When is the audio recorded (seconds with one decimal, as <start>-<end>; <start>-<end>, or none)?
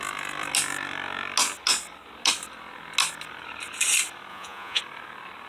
0.0-4.3; 4.8-5.5